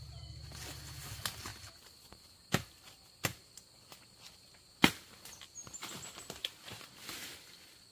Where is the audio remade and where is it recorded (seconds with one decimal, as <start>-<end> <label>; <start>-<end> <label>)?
0.0-7.9 recorded

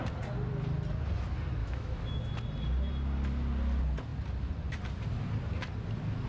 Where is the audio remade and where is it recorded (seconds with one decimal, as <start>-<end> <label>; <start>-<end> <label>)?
0.0-1.6 recorded; 1.6-2.2 remade; 2.2-6.3 recorded

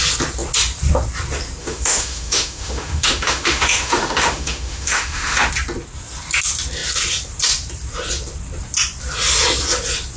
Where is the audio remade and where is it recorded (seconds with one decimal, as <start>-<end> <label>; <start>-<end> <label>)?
0.0-1.6 recorded; 1.6-5.5 remade; 5.5-10.2 recorded

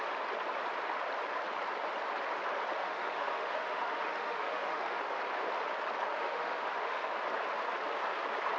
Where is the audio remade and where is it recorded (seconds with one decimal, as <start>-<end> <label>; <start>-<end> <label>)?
0.0-2.8 recorded; 2.8-5.0 remade; 5.0-6.1 recorded; 6.1-7.1 remade; 7.1-8.6 recorded

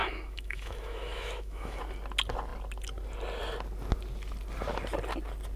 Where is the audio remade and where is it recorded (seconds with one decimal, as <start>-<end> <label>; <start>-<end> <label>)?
0.0-1.8 remade; 1.8-5.6 recorded